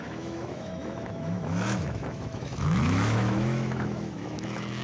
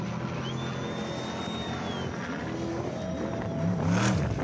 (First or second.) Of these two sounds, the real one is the second